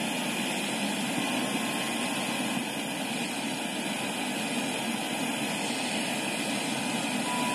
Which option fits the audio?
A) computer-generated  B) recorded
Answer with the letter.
B